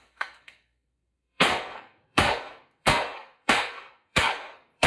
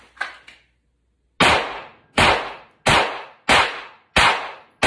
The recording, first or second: second